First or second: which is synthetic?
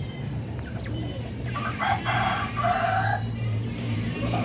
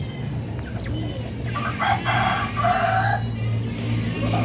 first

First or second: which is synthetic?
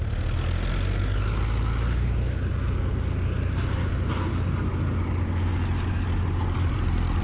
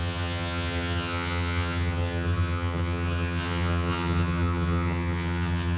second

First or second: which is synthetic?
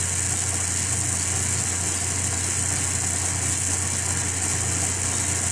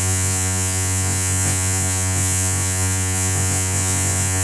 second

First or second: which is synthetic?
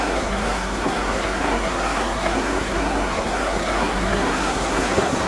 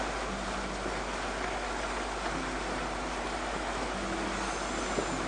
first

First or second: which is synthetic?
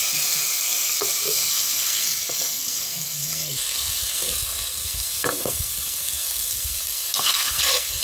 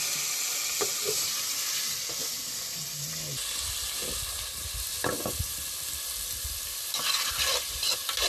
first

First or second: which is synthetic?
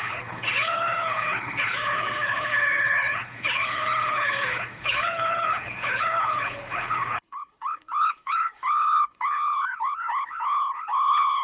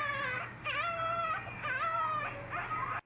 first